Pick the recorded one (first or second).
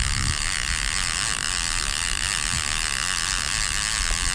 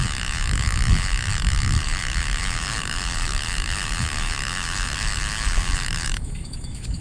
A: first